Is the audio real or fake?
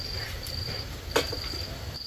real